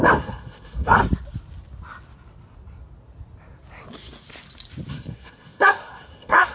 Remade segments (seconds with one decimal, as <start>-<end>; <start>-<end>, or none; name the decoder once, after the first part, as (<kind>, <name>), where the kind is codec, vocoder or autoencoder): 0.0-1.0 (codec, SNAC); 4.9-6.5